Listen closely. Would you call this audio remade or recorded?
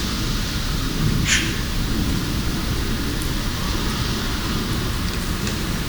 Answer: recorded